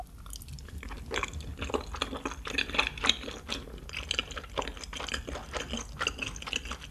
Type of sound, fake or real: real